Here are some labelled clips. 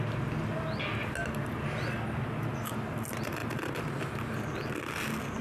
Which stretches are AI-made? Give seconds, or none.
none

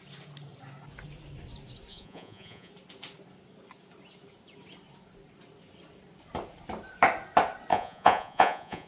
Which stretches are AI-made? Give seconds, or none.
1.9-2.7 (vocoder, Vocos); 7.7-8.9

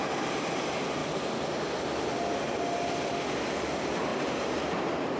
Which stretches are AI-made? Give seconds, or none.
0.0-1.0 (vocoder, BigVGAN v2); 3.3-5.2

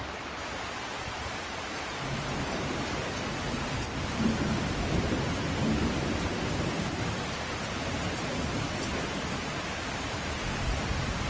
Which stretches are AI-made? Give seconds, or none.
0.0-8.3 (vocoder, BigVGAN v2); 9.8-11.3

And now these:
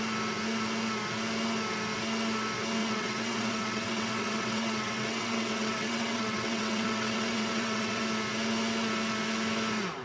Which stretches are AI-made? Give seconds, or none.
2.8-8.0 (vocoder, WaveNeXt)

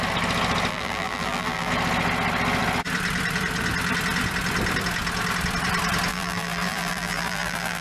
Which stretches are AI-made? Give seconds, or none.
0.7-1.7 (vocoder, BigVGAN v2); 6.1-7.8